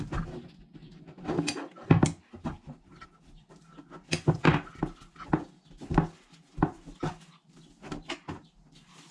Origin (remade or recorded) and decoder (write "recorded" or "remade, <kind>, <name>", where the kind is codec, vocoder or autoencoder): recorded